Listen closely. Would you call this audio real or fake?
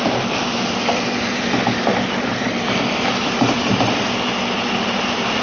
fake